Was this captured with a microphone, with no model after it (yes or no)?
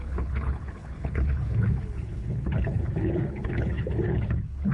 no